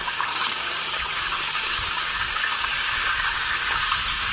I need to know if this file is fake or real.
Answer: fake